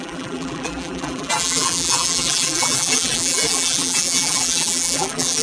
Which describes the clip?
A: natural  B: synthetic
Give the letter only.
B